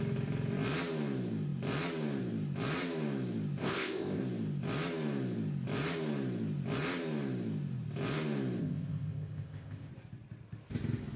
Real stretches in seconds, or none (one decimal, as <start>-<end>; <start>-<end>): 0.0-3.6; 4.2-8.6; 9.9-11.2

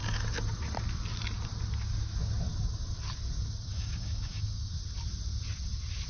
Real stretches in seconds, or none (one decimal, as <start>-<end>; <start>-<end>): 0.0-3.7; 4.7-6.1

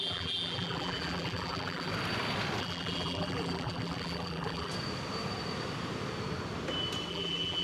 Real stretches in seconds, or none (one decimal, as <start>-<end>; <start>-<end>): 1.9-2.6; 4.7-7.1

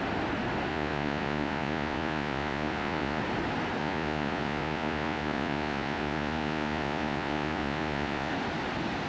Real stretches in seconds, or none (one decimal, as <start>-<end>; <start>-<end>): 0.0-0.7; 3.2-3.8; 8.3-9.1

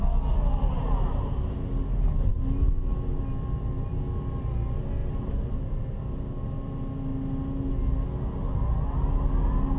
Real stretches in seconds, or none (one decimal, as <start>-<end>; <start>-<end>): 0.0-9.8

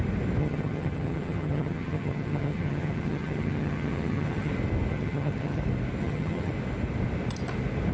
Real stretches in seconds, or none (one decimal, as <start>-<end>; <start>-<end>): 0.0-0.4; 4.5-4.9; 5.6-6.0; 6.5-7.9

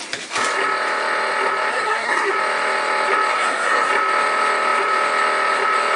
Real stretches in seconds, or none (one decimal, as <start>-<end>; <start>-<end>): 0.0-1.7; 2.3-3.3; 3.9-6.0